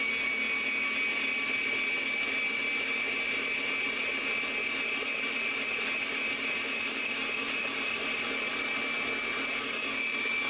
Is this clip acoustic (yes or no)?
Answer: yes